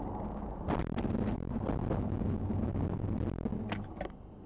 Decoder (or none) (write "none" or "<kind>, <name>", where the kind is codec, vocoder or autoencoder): none